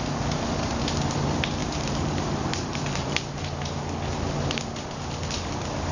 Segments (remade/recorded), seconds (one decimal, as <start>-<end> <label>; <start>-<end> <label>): 0.0-1.6 recorded; 1.6-3.2 remade; 3.2-5.9 recorded

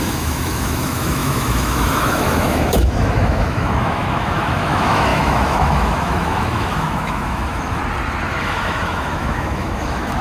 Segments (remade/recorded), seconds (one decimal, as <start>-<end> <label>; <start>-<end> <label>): 0.0-7.8 remade; 7.8-8.4 recorded; 8.4-10.2 remade

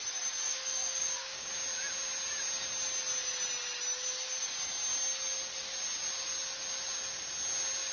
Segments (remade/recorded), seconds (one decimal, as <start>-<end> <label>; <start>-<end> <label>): 0.0-0.4 recorded; 0.4-1.5 remade; 1.5-7.9 recorded